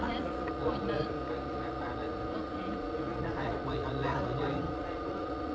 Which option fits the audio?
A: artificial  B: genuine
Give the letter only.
A